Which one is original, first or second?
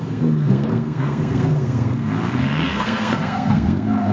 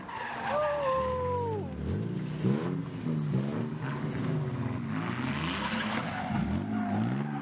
second